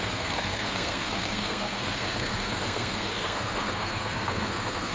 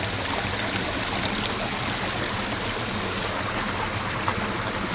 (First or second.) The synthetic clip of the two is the first